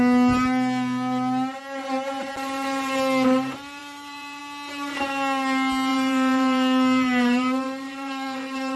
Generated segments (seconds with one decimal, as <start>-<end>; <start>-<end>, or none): 3.8-4.4; 5.9-8.8